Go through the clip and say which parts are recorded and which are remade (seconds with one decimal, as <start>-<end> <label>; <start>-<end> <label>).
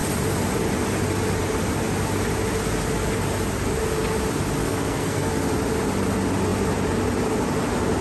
0.0-4.6 recorded; 4.6-5.3 remade; 5.3-8.0 recorded